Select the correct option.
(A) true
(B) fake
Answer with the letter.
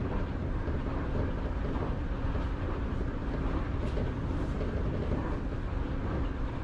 B